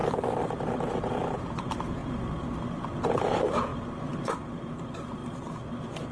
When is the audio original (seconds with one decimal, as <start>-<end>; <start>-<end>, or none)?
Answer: 5.2-6.1